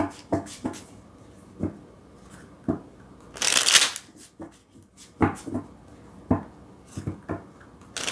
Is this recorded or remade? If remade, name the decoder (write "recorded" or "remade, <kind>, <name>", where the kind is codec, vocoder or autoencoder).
recorded